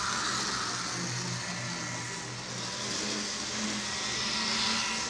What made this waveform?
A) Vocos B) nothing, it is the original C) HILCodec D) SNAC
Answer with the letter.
B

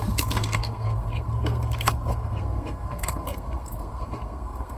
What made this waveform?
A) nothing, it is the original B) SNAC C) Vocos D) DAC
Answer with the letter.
B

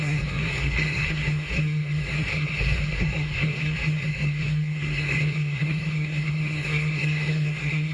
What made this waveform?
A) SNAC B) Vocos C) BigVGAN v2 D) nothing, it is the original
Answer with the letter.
A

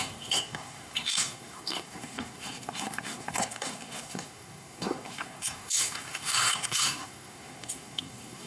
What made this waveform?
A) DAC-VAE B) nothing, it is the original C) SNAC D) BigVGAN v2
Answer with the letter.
C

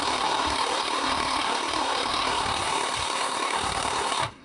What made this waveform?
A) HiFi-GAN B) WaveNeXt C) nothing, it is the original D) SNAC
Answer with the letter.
D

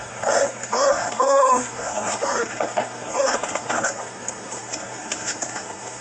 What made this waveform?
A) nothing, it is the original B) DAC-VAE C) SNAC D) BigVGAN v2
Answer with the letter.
C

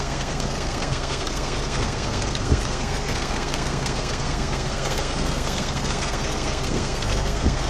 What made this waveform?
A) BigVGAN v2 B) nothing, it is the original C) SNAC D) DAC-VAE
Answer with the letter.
C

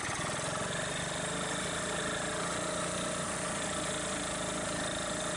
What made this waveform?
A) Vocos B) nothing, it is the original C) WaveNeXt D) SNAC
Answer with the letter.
B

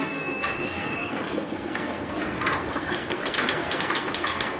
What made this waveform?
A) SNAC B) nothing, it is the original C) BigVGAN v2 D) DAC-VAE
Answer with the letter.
A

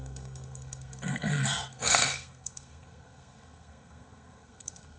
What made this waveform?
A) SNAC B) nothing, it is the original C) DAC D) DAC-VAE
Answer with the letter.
A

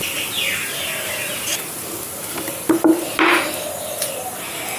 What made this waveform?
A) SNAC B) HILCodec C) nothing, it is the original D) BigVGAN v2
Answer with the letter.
C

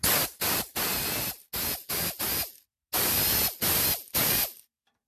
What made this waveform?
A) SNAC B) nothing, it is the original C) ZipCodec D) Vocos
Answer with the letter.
B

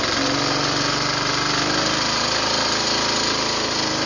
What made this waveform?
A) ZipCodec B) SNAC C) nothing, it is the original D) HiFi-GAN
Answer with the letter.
C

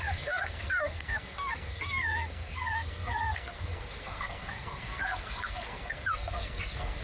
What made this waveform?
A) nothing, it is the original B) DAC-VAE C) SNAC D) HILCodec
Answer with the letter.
C